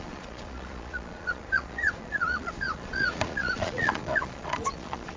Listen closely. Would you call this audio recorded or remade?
remade